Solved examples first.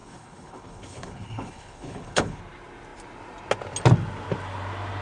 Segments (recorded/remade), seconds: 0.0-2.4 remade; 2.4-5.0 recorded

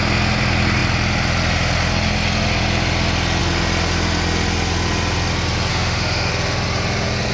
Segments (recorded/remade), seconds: 0.0-5.7 recorded; 5.7-6.3 remade; 6.3-7.3 recorded